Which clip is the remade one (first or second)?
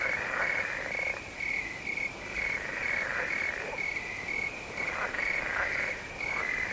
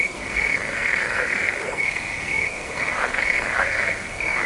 second